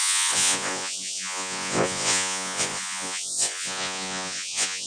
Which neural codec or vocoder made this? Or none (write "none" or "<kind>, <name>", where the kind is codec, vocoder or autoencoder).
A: vocoder, Vocos